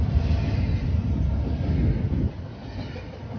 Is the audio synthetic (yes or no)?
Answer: no